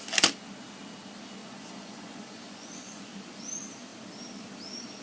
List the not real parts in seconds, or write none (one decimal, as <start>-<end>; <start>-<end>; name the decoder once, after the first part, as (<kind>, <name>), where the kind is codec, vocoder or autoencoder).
1.4-3.1 (vocoder, Vocos)

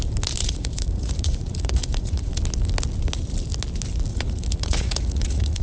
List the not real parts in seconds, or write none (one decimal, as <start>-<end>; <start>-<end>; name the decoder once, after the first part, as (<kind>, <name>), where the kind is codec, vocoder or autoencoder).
0.4-2.4 (vocoder, Vocos); 4.1-5.6

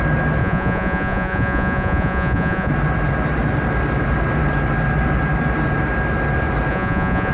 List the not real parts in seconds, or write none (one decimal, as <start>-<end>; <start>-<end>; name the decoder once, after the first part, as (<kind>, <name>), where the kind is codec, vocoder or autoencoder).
0.4-2.7 (vocoder, Vocos); 6.7-7.3

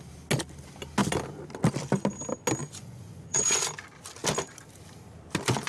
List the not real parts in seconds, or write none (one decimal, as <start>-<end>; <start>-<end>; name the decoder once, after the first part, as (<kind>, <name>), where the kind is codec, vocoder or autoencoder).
2.6-3.6 (vocoder, Vocos)